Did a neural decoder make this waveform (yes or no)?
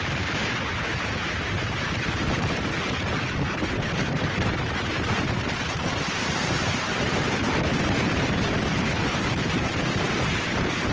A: yes